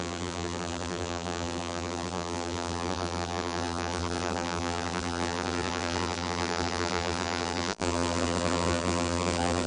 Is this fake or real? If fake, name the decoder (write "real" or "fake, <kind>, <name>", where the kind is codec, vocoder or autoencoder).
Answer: fake, vocoder, BigVGAN v2